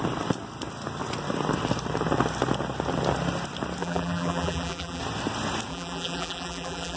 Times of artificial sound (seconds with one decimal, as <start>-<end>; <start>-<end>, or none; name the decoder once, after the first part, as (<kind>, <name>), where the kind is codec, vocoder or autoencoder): 3.8-5.0 (vocoder, BigVGAN v2); 5.7-7.0